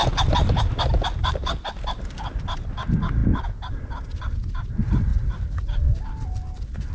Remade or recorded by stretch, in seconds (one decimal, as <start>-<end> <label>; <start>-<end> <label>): 0.0-6.9 recorded